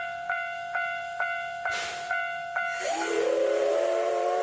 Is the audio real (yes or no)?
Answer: no